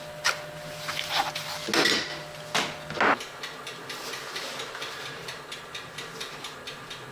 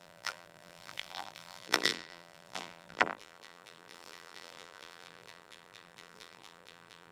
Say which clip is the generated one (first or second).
second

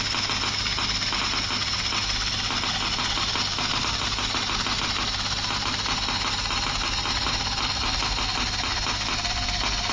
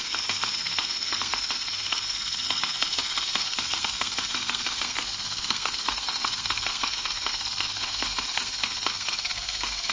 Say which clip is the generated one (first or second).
second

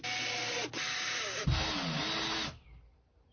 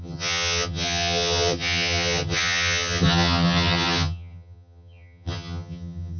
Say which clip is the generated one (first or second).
second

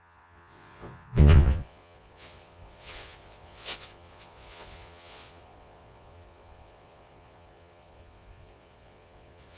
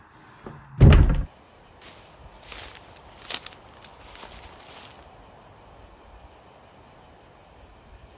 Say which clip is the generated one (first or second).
first